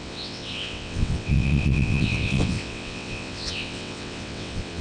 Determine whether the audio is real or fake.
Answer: fake